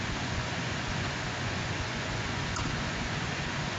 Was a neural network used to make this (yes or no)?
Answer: yes